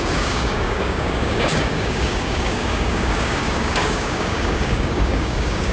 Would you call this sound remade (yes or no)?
yes